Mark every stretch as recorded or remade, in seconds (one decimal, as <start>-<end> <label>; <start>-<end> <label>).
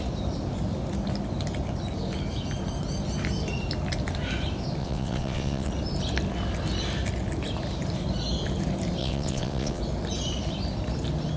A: 0.0-4.8 recorded; 4.8-5.7 remade; 5.7-9.0 recorded; 9.0-9.8 remade; 9.8-11.4 recorded